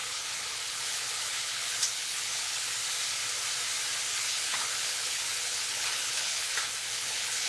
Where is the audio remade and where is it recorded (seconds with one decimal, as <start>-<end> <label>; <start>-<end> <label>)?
0.0-2.8 remade; 2.8-4.1 recorded; 4.1-7.5 remade